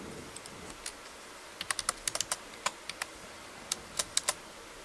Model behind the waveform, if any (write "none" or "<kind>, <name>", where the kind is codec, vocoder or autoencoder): none